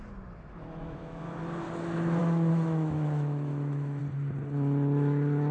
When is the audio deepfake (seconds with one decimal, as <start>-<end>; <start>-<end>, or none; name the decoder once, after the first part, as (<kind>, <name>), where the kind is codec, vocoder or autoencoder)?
0.8-1.4 (autoencoder, DAC-VAE); 2.2-4.0